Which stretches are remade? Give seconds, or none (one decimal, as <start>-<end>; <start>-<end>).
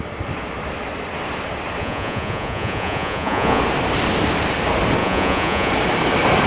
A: 1.8-3.6; 5.0-5.7